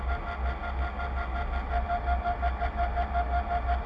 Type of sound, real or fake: real